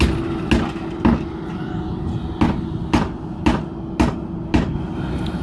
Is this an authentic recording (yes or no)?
yes